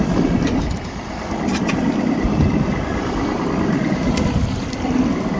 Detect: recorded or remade remade